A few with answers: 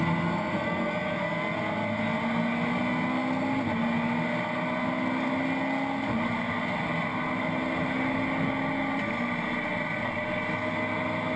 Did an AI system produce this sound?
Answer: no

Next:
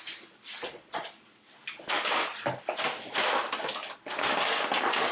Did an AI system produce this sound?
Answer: no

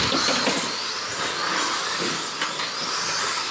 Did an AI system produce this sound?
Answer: no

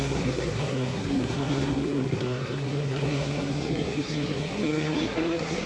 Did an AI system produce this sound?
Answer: yes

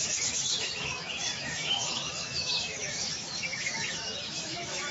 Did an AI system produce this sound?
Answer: yes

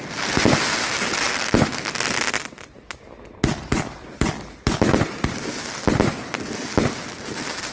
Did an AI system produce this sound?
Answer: no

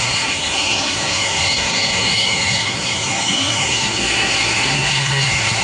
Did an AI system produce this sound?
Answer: yes